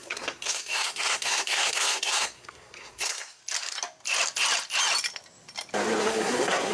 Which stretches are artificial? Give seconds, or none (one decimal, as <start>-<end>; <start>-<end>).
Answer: 0.0-3.4; 6.0-6.7